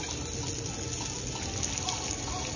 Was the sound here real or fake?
real